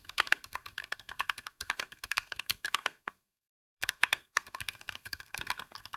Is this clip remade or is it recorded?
remade